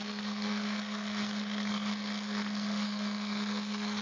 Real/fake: fake